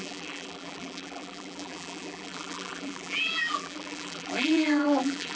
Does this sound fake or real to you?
fake